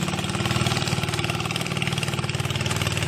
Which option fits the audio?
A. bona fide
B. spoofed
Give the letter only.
A